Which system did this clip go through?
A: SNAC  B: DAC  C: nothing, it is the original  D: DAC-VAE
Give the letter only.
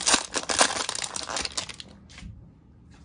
C